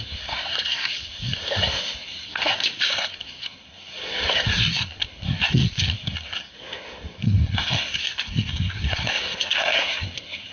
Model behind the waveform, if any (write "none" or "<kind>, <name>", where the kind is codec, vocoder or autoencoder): codec, SNAC